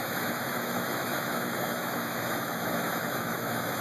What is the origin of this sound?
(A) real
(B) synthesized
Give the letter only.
B